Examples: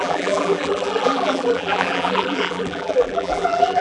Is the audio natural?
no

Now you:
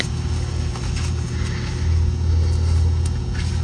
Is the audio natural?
yes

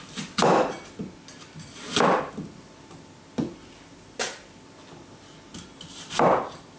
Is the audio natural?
yes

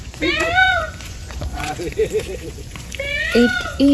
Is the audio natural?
no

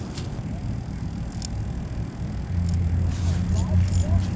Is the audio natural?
yes